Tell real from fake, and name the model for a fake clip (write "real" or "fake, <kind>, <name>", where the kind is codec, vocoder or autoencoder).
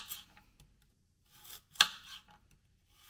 real